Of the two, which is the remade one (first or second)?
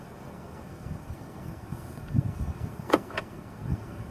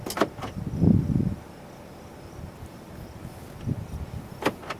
first